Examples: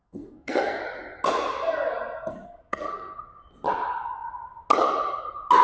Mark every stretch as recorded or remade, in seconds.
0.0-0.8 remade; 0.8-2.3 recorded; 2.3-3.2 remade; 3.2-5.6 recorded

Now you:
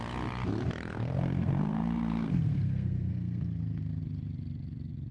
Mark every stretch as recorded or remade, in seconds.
0.0-0.9 recorded; 0.9-4.0 remade; 4.0-5.1 recorded

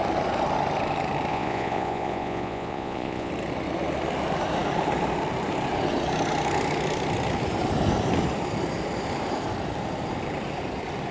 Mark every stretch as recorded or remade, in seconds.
0.0-1.3 recorded; 1.3-3.3 remade; 3.3-11.1 recorded